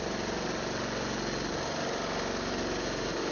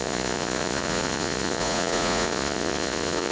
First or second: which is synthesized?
second